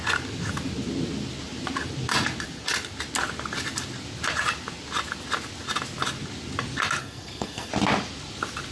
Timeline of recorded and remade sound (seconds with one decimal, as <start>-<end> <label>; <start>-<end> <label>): 0.0-7.0 recorded; 7.0-7.7 remade; 7.7-8.7 recorded